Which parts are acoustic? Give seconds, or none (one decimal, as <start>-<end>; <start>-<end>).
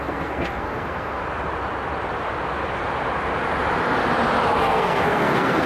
1.2-4.6